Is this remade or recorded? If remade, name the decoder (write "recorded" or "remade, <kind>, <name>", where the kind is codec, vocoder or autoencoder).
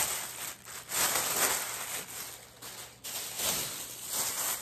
recorded